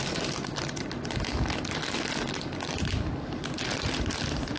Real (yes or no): yes